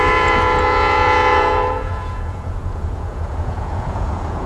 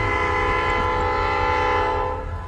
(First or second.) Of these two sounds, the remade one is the first